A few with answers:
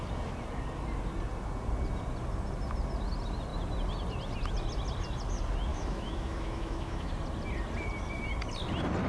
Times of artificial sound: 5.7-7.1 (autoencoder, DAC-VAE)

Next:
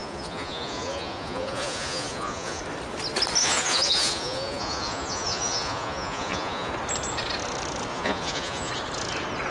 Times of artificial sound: 0.0-2.6 (vocoder, Vocos); 3.4-6.7; 7.9-8.7

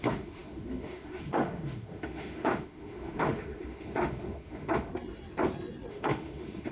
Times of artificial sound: 0.0-4.9 (autoencoder, DAC-VAE); 5.9-6.7

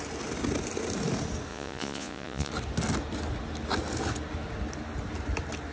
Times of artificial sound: 1.5-2.5 (vocoder, Vocos)

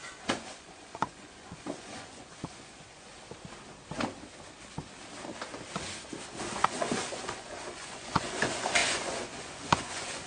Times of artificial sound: 0.0-3.1 (vocoder, Vocos); 6.5-10.3

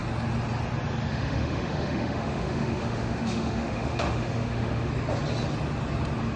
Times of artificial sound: 1.1-4.9 (autoencoder, DAC-VAE)

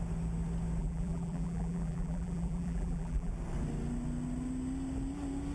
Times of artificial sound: 0.8-3.3 (vocoder, BigVGAN v2)